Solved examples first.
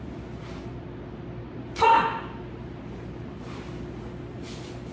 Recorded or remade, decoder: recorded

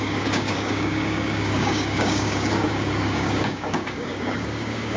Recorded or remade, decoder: remade, codec, DAC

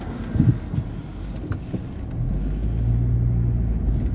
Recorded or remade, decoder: recorded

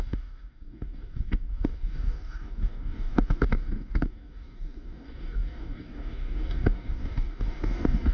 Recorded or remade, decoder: remade, codec, DAC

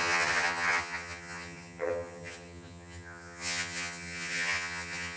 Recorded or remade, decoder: remade, vocoder, HiFi-GAN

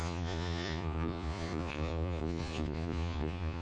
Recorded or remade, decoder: remade, vocoder, Vocos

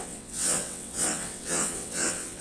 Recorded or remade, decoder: remade, vocoder, WaveNeXt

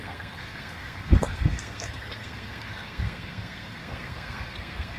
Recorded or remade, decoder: remade, codec, SNAC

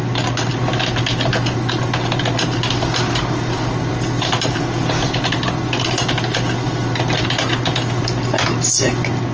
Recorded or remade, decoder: recorded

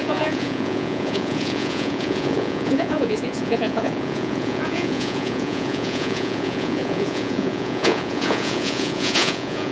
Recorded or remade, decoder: remade, vocoder, Vocos